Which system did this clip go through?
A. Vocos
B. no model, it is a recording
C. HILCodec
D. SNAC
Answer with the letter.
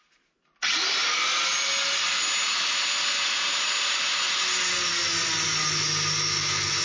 B